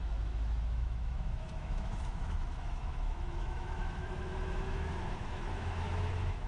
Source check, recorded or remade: remade